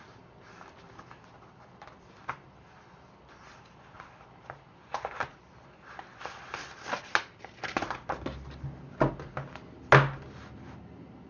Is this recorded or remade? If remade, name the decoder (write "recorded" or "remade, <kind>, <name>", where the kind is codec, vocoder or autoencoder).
recorded